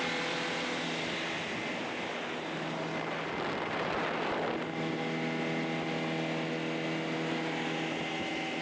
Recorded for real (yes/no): yes